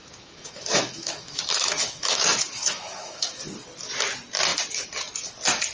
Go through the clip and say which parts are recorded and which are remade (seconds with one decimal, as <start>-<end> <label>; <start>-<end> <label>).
0.0-3.4 remade; 3.4-5.7 recorded